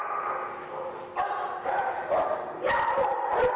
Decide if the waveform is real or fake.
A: real